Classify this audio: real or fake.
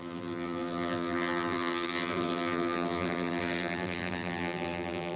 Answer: fake